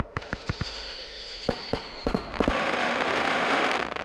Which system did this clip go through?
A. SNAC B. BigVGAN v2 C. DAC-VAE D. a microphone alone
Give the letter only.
C